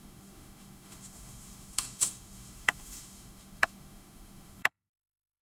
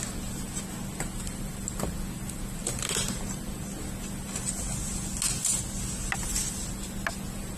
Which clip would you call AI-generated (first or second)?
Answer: first